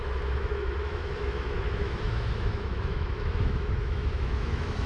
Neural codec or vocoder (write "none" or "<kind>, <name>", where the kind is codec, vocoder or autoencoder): autoencoder, DAC-VAE